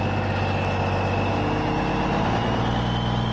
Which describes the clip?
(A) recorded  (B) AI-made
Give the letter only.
A